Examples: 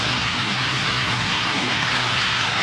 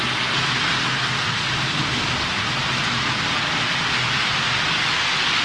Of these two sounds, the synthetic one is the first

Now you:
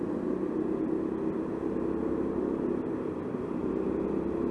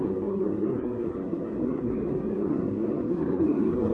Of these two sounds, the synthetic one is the second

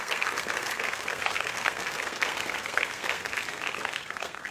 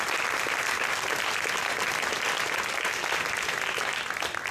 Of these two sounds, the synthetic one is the first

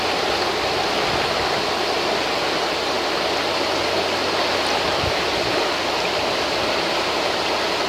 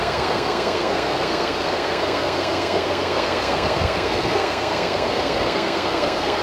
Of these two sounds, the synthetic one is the second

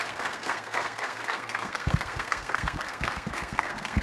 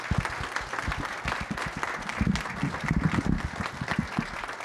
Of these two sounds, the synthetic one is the first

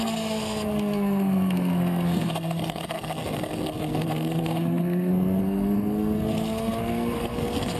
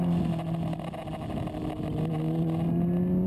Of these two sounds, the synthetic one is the first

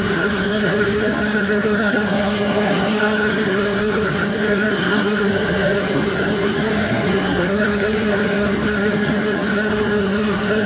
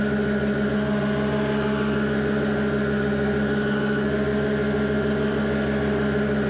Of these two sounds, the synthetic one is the first